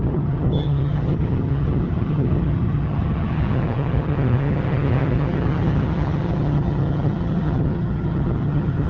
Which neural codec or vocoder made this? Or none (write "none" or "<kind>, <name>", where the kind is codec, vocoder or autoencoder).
vocoder, HiFi-GAN